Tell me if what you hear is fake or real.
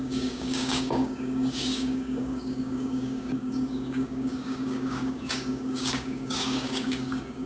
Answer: fake